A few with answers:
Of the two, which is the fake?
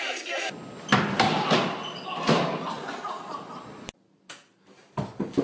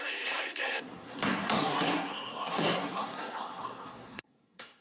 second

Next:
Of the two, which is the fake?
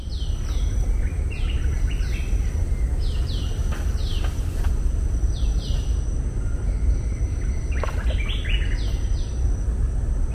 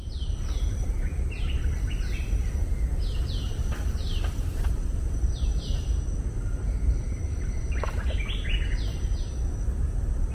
second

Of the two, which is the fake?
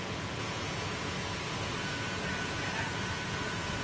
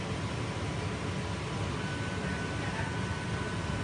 first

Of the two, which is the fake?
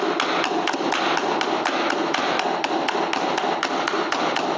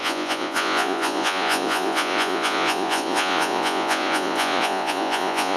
second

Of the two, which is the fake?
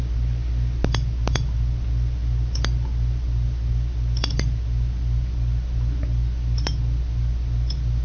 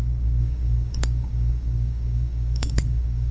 second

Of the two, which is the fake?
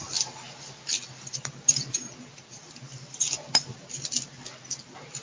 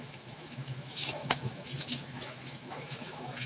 second